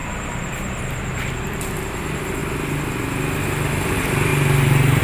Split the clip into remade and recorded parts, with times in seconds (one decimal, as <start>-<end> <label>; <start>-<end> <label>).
0.0-2.4 remade; 2.4-3.9 recorded; 3.9-4.3 remade; 4.3-5.0 recorded